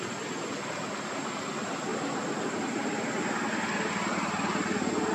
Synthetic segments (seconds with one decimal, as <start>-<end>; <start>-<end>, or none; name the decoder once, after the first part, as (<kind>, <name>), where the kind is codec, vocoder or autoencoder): none